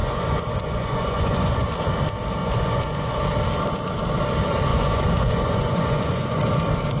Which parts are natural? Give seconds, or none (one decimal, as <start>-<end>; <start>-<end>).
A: 1.7-2.4; 3.2-4.7; 6.4-7.0